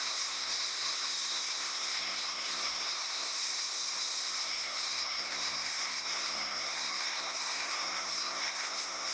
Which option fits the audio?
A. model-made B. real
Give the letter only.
A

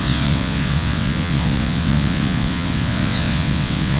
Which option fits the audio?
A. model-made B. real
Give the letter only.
A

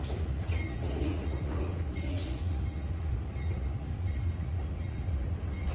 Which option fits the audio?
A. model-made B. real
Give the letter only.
A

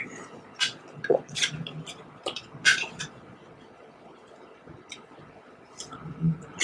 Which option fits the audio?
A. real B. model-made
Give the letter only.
B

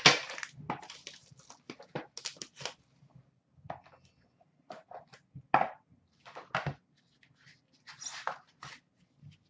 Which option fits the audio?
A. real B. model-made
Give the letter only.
A